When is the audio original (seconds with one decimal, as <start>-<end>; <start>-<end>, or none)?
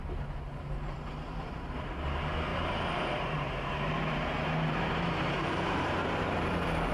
0.0-2.5